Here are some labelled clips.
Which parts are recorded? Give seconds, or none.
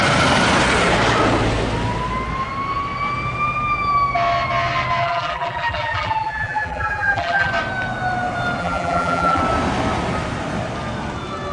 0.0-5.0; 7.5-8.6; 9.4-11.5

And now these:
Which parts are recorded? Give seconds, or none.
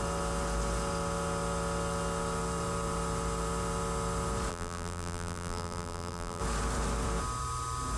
0.0-4.5; 6.4-8.0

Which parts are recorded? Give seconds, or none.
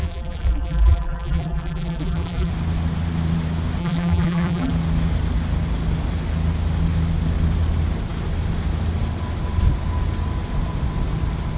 2.5-3.8; 4.7-11.6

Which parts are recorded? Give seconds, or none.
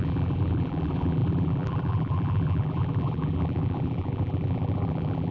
none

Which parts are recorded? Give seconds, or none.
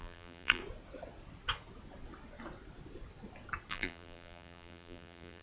0.6-3.7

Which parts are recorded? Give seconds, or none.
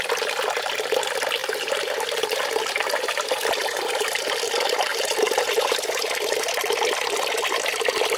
0.0-1.4; 4.2-4.9; 6.5-8.2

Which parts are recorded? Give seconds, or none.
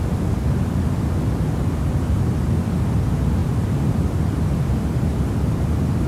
0.0-3.4; 4.2-6.1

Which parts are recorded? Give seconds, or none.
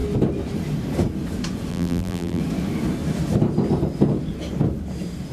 0.0-1.7; 2.4-5.3